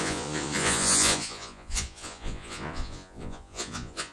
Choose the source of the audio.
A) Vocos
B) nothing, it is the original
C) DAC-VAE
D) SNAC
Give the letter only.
A